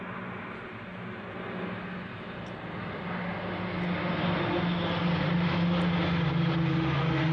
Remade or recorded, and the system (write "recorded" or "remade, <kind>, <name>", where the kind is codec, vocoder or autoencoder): recorded